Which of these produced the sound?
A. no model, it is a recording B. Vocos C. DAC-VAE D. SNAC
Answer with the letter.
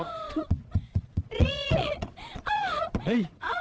B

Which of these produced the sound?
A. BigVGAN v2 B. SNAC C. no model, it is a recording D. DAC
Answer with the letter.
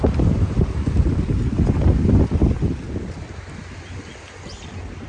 C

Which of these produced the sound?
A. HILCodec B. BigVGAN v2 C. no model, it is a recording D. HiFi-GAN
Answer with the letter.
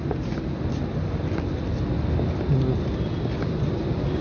C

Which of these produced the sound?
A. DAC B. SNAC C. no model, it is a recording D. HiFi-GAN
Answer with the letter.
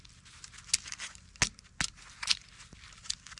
C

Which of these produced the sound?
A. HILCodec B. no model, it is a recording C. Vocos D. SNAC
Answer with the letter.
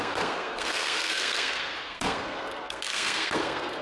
D